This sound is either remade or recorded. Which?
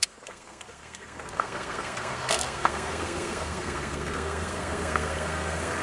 remade